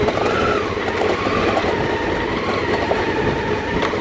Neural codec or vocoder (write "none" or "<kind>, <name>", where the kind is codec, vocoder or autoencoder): none